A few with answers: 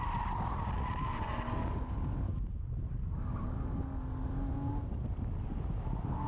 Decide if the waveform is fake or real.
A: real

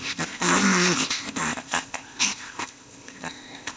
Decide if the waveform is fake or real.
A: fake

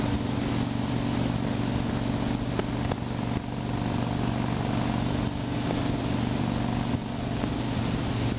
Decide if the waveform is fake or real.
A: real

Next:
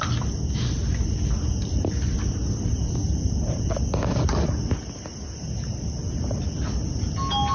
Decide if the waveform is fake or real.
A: real